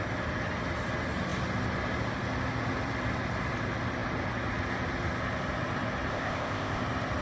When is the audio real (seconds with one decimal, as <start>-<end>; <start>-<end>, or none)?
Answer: 0.0-6.1; 6.8-7.2